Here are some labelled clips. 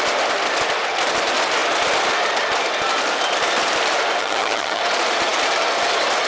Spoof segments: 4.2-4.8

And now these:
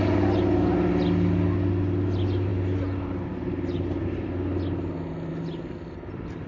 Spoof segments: none

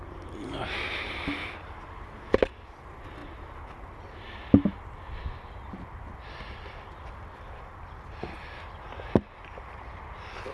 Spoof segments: none